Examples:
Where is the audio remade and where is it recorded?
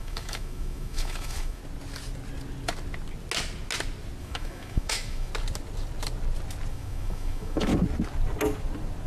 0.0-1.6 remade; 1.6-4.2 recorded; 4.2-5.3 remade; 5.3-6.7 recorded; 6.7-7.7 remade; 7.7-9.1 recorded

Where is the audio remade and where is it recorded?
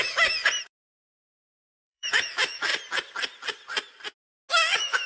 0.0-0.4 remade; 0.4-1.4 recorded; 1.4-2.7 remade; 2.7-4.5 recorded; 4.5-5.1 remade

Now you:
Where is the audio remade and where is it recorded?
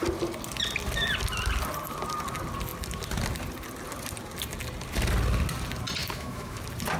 0.0-6.0 recorded; 6.0-6.6 remade; 6.6-7.0 recorded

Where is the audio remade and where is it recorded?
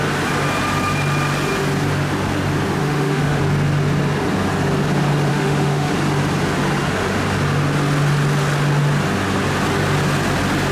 0.0-2.8 recorded; 2.8-3.4 remade; 3.4-5.3 recorded; 5.3-5.9 remade; 5.9-10.7 recorded